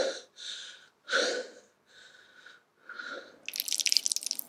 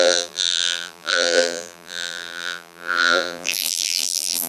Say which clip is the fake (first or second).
second